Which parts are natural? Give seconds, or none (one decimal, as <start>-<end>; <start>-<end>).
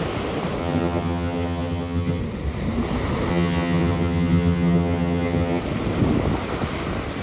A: 0.0-0.6; 2.2-3.3; 5.6-7.2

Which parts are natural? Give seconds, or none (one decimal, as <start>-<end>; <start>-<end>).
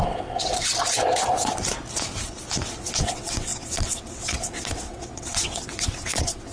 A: 0.5-3.0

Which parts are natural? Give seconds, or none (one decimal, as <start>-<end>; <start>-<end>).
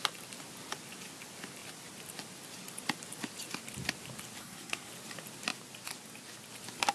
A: 0.0-4.4; 4.9-6.9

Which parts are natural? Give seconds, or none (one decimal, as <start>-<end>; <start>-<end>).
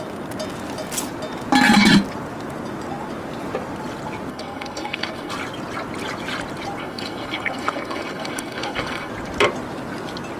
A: 0.0-4.3; 5.3-6.8; 9.1-10.4